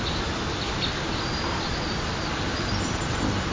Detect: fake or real real